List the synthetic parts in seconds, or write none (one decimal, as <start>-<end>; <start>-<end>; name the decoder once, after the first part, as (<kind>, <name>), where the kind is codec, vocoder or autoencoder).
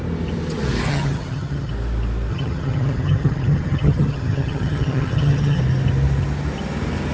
0.9-1.7 (vocoder, HiFi-GAN); 2.3-5.6